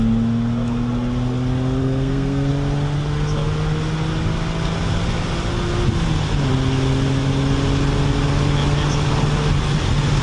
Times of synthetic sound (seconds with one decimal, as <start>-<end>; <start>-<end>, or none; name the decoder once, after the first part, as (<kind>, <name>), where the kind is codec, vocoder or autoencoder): 1.8-2.5 (codec, SNAC)